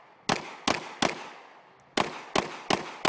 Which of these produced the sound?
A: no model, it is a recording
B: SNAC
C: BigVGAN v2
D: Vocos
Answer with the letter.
A